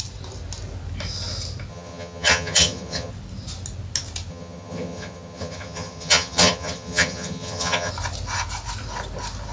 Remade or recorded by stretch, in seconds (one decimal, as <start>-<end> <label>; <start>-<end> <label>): 0.0-1.7 recorded; 1.7-3.1 remade; 3.1-4.3 recorded; 4.3-7.9 remade; 7.9-9.5 recorded